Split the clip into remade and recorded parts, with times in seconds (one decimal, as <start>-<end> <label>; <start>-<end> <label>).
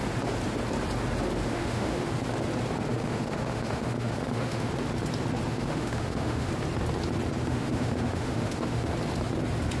0.0-1.5 recorded; 1.5-2.1 remade; 2.1-2.9 recorded; 2.9-4.7 remade; 4.7-5.5 recorded; 5.5-6.5 remade; 6.5-7.4 recorded; 7.4-8.9 remade; 8.9-9.8 recorded